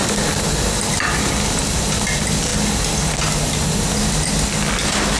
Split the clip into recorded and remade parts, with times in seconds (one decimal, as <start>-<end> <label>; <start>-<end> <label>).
0.0-5.2 recorded